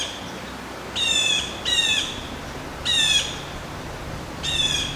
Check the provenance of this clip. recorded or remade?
recorded